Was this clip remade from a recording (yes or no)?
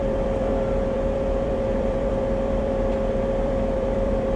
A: yes